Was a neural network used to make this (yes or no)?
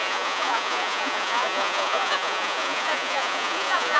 yes